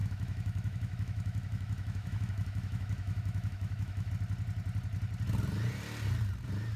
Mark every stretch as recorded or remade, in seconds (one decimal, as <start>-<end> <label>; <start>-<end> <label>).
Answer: 0.0-4.1 remade; 4.1-6.8 recorded